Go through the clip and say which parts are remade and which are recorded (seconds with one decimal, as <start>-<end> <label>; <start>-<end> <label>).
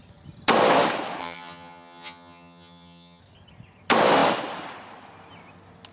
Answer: 0.0-1.2 recorded; 1.2-3.2 remade; 3.2-5.9 recorded